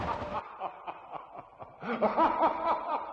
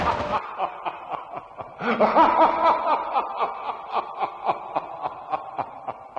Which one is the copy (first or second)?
first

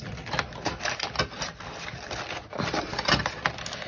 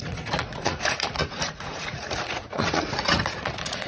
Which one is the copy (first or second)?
second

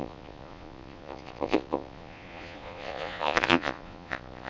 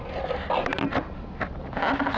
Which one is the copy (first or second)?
first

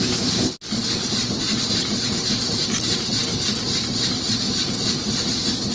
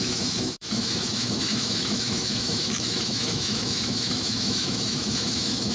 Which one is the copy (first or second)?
second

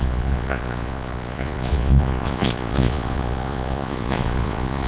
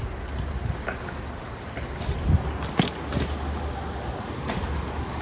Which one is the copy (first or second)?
first